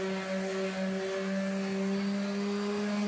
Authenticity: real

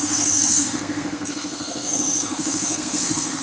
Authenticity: fake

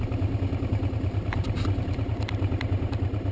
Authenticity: real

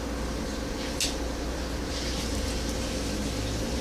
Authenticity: real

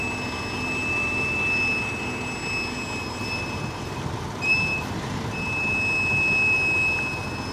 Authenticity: real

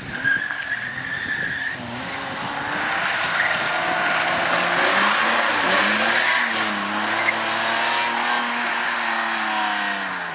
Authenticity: real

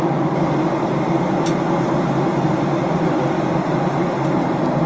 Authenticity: real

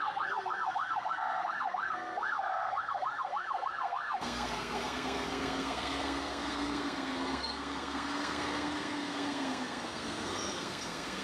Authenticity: fake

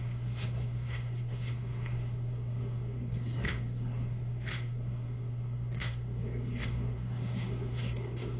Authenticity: fake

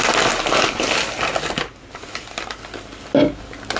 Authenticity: real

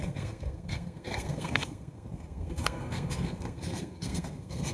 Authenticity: fake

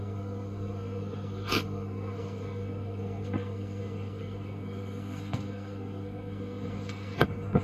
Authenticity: fake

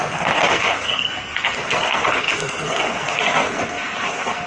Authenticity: fake